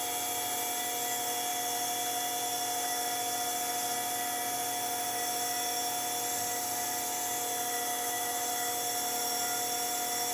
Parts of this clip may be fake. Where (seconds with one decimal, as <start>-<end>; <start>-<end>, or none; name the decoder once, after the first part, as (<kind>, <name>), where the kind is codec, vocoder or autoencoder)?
7.9-8.5 (autoencoder, DAC-VAE)